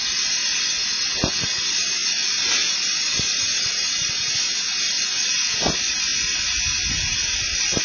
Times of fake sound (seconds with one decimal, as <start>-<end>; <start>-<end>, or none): none